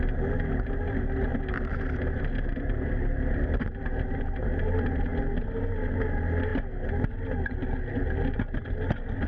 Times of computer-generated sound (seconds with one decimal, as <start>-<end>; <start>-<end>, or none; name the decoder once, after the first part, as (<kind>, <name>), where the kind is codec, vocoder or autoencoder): none